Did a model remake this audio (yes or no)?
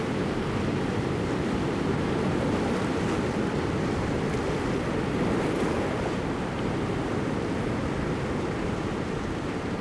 no